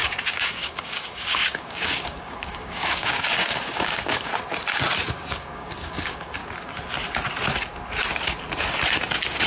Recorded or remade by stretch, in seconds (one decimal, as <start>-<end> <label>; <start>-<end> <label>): 0.0-4.3 remade; 4.3-5.1 recorded; 5.1-6.4 remade; 6.4-9.5 recorded